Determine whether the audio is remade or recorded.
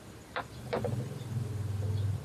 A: recorded